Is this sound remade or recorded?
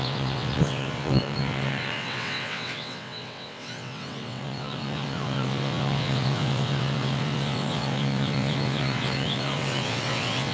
remade